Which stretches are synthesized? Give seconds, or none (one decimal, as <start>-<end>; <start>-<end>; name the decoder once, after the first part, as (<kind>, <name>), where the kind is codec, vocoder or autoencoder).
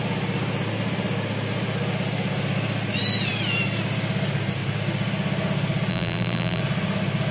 5.9-6.6 (vocoder, BigVGAN v2)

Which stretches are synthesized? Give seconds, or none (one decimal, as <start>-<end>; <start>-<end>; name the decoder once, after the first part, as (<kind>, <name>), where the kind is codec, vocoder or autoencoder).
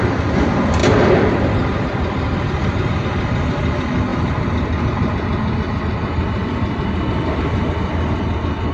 0.8-2.9 (vocoder, BigVGAN v2); 4.1-5.8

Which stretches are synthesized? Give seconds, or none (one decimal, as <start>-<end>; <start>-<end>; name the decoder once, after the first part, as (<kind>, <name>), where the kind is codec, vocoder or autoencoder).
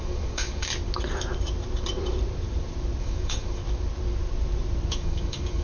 0.0-0.7 (codec, DAC); 3.0-3.6; 4.9-5.6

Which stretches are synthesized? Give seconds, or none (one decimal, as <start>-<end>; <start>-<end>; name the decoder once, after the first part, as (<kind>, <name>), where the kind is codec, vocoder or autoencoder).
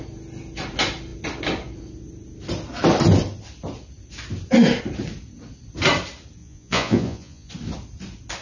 6.4-7.5 (vocoder, Vocos)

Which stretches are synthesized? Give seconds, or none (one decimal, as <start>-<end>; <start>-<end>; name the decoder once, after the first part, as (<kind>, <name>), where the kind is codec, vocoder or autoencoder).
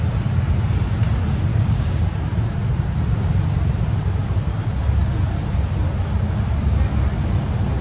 1.5-2.0 (codec, DAC)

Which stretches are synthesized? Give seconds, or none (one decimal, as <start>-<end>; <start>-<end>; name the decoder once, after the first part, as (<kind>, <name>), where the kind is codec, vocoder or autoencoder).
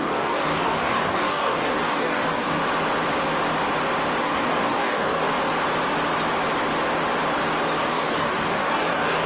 0.0-2.6 (codec, DAC); 4.2-5.3; 7.8-9.3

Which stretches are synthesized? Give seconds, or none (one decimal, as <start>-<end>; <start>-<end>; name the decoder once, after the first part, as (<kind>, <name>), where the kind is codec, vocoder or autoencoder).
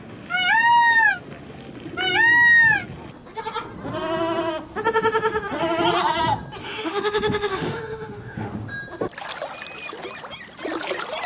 6.6-8.5 (autoencoder, DAC-VAE)